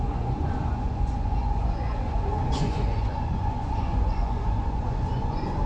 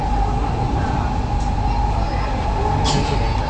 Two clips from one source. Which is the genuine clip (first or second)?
second